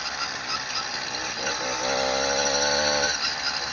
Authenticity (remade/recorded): recorded